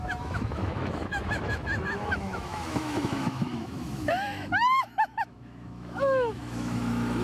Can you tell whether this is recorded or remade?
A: remade